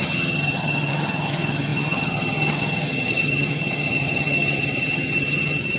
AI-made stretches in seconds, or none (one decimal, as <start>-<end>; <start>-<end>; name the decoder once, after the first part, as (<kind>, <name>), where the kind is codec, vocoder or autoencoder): 0.0-5.8 (vocoder, HiFi-GAN)